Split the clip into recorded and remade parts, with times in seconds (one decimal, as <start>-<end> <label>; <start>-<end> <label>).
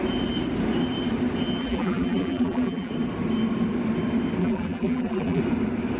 0.0-1.6 recorded; 1.6-2.9 remade; 2.9-4.4 recorded; 4.4-5.4 remade; 5.4-6.0 recorded